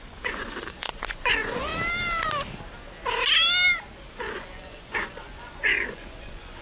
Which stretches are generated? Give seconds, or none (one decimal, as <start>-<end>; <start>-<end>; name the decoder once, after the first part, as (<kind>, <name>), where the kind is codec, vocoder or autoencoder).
0.0-1.7 (vocoder, Vocos); 4.1-6.6